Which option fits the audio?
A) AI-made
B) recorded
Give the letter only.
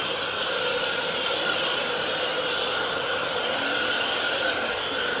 B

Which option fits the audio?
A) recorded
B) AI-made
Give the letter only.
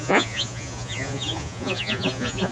B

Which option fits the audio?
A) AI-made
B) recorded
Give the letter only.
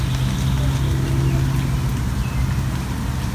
B